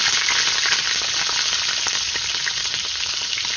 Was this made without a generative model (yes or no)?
yes